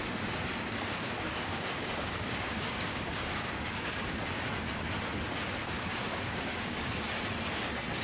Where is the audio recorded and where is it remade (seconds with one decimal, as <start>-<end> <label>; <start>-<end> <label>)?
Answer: 0.0-0.9 recorded; 0.9-4.2 remade; 4.2-5.6 recorded; 5.6-6.9 remade; 6.9-8.0 recorded